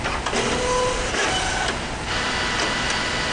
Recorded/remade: recorded